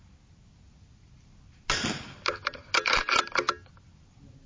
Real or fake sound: real